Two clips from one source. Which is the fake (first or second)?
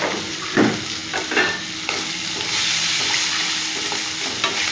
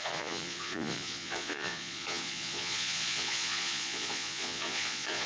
second